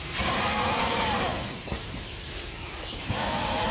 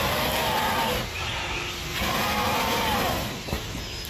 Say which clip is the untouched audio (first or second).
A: second